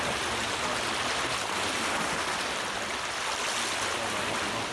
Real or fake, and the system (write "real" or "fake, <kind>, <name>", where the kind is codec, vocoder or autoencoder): real